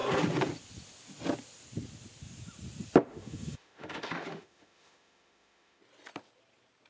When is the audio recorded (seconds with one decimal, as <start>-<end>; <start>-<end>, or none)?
0.0-3.1; 5.8-6.9